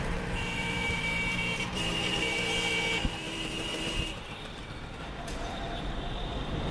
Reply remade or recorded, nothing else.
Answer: remade